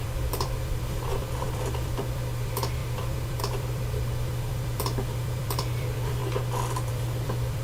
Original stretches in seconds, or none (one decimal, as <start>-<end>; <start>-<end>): 6.2-6.9